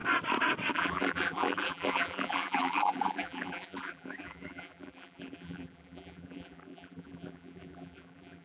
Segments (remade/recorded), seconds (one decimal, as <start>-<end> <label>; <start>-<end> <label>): 0.0-0.7 recorded; 0.7-8.4 remade